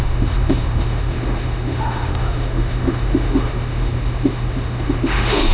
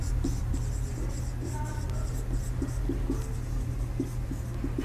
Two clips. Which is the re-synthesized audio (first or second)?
first